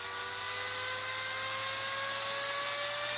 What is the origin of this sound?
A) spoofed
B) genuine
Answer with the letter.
B